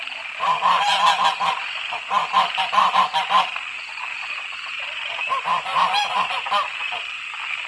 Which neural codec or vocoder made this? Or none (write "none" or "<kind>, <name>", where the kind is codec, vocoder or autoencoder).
none